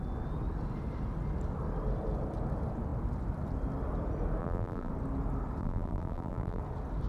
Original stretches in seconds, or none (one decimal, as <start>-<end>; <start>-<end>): 0.0-4.4; 4.9-5.6; 6.6-7.1